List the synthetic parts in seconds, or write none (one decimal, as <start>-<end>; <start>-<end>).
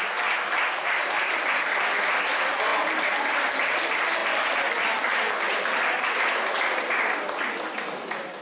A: none